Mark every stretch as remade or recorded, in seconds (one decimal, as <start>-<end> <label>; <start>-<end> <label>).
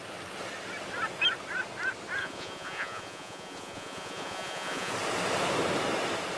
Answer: 0.0-2.2 recorded; 2.2-4.9 remade; 4.9-6.4 recorded